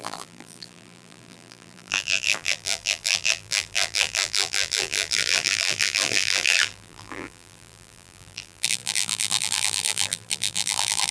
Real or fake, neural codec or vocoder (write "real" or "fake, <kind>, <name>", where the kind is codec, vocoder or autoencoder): fake, vocoder, BigVGAN v2